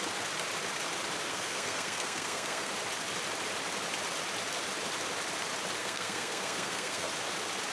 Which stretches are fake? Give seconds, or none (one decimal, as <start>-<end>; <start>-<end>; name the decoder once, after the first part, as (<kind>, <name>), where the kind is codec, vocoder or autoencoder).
1.3-2.7 (codec, SNAC); 5.8-7.1